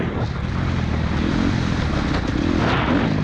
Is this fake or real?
real